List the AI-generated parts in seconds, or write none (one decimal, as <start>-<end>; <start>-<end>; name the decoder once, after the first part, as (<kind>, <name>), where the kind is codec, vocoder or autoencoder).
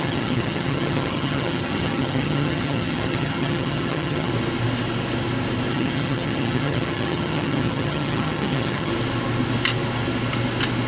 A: 0.0-4.3 (vocoder, HiFi-GAN); 5.7-8.9